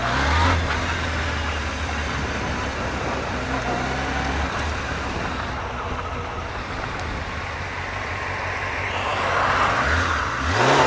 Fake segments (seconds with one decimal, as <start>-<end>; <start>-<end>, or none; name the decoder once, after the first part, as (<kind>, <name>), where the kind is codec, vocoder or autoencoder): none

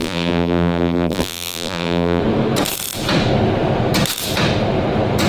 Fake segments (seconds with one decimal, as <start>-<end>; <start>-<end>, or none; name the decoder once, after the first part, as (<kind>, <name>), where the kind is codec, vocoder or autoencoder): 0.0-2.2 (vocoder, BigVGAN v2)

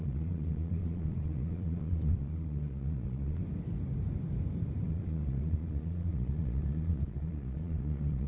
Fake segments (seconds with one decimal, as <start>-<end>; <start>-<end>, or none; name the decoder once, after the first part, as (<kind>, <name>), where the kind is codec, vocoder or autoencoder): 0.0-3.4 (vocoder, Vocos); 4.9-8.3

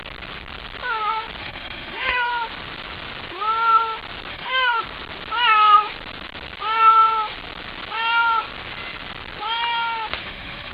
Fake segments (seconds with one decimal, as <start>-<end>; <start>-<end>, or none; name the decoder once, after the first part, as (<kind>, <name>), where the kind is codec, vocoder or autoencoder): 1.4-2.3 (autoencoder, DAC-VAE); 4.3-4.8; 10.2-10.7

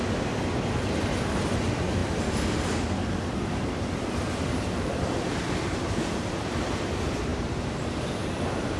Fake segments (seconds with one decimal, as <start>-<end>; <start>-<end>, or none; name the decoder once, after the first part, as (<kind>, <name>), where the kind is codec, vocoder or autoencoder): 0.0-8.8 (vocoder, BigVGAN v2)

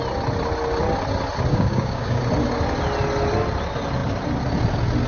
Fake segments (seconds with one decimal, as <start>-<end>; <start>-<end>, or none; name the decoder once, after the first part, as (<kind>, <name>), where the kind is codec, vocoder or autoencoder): 1.5-2.2 (codec, DAC)